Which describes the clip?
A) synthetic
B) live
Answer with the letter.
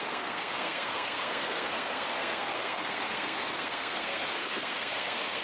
A